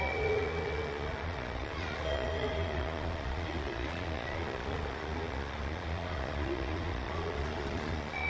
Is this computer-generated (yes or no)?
yes